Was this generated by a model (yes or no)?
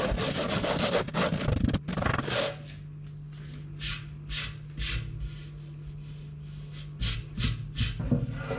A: no